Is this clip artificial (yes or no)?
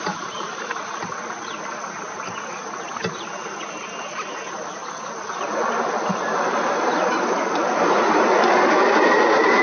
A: no